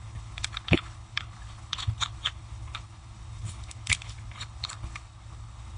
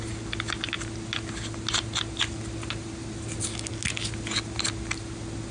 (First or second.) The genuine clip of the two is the second